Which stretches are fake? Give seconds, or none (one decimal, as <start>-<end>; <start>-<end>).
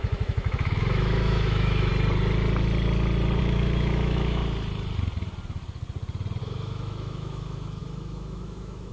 0.0-1.9; 3.4-4.4; 6.4-8.9